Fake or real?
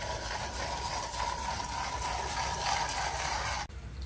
real